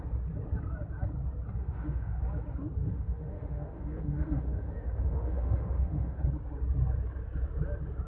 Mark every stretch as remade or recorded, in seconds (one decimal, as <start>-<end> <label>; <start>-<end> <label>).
0.0-1.6 recorded; 1.6-2.2 remade; 2.2-2.8 recorded; 2.8-6.2 remade; 6.2-8.1 recorded